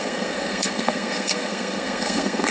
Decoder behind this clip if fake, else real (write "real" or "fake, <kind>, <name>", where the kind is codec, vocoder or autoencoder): fake, codec, SNAC